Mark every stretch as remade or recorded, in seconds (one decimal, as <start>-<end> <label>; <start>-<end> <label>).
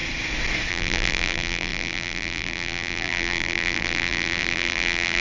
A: 0.0-0.7 recorded; 0.7-5.2 remade